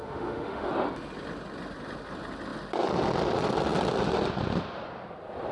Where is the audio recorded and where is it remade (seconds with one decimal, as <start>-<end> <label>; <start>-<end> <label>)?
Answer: 0.0-0.7 remade; 0.7-5.5 recorded